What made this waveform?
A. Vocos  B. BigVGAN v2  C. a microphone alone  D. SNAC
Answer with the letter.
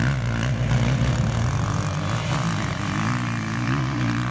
C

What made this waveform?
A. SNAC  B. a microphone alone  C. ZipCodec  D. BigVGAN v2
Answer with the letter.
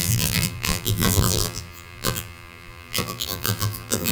D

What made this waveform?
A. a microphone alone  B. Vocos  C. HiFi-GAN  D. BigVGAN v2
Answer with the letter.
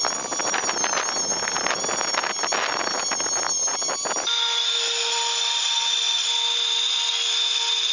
A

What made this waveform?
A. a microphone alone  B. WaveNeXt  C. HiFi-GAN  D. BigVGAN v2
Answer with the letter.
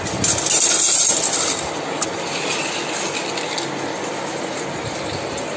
A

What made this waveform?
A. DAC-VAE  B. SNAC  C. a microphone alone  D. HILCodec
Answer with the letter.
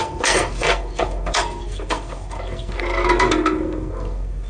B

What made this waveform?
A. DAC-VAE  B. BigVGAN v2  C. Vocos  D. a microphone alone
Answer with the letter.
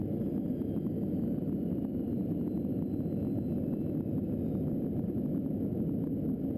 D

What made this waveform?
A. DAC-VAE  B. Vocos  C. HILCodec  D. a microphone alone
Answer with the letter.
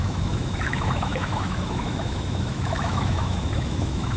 A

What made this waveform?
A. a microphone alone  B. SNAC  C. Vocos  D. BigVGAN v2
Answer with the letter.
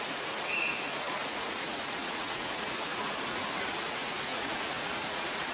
C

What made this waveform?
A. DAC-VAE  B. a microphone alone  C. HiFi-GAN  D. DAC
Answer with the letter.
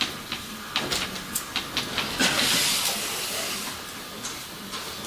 B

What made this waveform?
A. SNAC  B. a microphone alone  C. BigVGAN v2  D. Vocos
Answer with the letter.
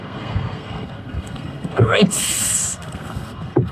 A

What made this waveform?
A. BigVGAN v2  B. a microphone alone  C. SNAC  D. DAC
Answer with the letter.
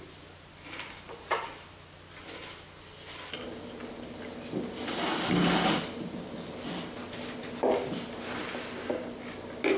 B